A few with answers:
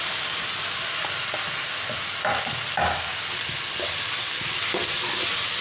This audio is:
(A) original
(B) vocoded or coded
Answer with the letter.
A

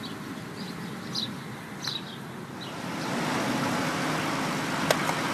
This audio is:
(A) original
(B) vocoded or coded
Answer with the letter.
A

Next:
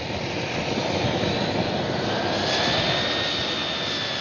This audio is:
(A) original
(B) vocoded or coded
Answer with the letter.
A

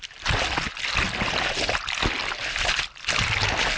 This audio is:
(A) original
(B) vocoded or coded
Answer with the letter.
A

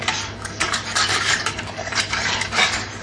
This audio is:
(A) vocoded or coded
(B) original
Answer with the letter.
A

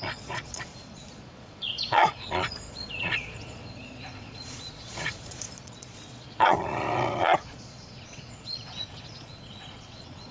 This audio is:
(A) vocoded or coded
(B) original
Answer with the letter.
A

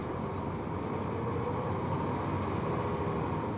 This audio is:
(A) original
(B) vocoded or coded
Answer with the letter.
A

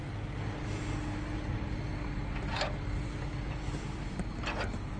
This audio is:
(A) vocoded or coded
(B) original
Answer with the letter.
B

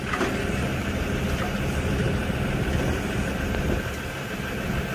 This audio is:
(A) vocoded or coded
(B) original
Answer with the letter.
B